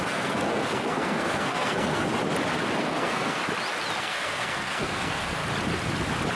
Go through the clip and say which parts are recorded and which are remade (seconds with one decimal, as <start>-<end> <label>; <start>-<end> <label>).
0.0-2.1 remade; 2.1-2.8 recorded; 2.8-3.4 remade; 3.4-4.0 recorded; 4.0-5.4 remade; 5.4-6.4 recorded